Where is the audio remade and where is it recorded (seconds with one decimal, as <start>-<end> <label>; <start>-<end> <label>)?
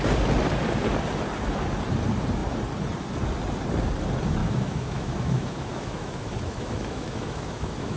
0.0-4.4 recorded; 4.4-8.0 remade